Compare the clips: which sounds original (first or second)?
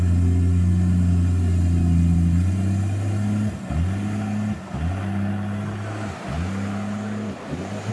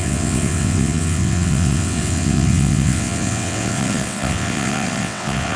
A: first